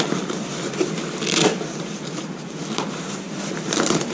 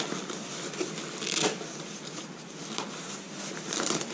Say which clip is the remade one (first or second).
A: first